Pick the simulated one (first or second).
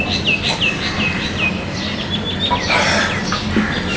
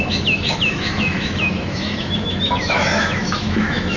second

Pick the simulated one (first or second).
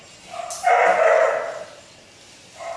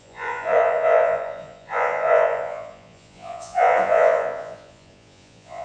second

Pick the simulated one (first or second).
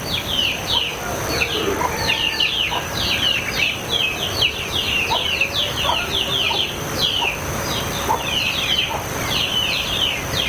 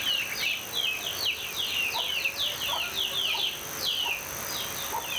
first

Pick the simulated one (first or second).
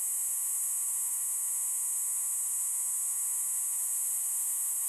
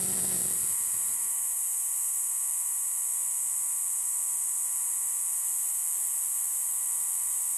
second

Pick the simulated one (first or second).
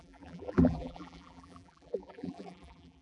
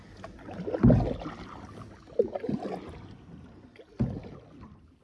first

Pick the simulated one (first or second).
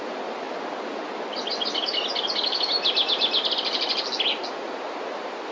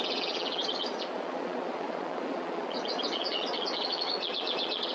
second